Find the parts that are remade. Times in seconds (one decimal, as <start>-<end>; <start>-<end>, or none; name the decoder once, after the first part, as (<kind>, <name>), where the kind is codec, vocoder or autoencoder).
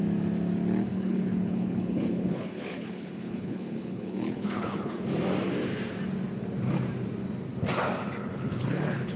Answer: 0.9-5.0 (codec, HILCodec); 8.2-9.2